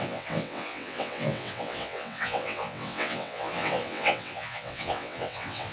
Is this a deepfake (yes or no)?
yes